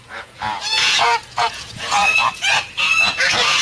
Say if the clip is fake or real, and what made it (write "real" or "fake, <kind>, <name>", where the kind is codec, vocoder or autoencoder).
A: fake, vocoder, Vocos